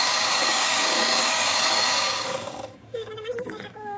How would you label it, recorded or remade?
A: remade